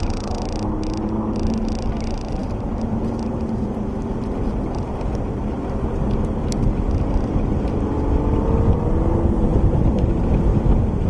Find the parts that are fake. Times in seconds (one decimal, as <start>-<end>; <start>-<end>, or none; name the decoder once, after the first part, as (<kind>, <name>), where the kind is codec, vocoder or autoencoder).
9.5-10.1 (vocoder, BigVGAN v2)